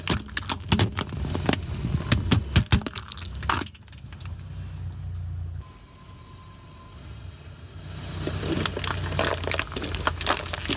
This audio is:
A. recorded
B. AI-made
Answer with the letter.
A